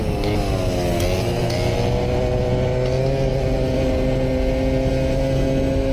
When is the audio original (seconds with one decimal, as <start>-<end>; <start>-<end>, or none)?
0.0-5.9